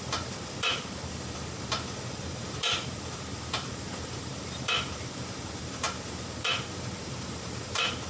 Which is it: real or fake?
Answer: fake